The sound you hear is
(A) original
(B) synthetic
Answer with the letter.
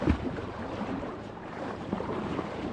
B